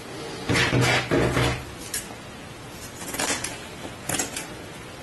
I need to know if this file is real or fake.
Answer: real